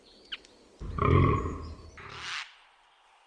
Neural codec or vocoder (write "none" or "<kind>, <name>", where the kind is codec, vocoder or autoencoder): none